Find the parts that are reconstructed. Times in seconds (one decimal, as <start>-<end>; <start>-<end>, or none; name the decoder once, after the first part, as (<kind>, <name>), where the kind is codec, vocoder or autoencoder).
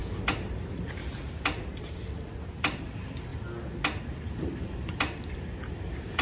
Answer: 0.0-1.7 (vocoder, BigVGAN v2); 2.7-3.3; 4.0-6.2